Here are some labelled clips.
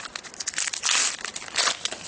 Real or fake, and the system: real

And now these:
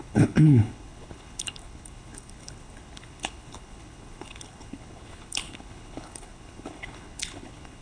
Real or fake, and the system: fake, codec, HILCodec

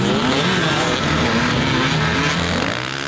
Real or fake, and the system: real